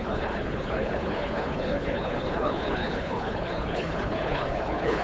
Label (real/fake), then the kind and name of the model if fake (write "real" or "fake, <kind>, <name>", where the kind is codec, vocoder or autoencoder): fake, codec, HILCodec